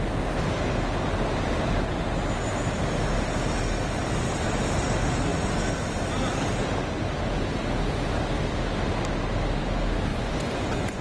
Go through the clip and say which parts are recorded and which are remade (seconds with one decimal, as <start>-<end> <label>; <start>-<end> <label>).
0.0-10.1 recorded; 10.1-11.0 remade